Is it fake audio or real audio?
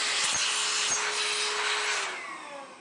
real